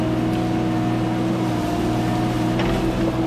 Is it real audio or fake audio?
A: real